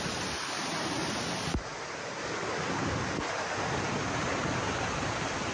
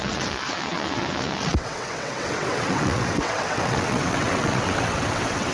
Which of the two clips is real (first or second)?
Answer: first